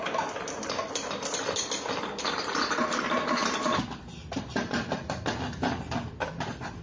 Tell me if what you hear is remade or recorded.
remade